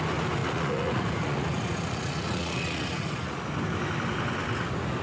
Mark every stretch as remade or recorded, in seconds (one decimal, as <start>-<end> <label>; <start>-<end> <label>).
0.0-0.4 recorded; 0.4-3.4 remade; 3.4-5.0 recorded